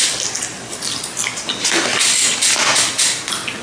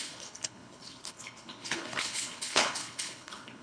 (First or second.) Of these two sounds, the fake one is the second